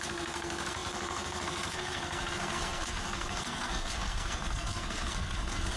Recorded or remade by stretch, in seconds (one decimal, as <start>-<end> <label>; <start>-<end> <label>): 0.0-5.8 remade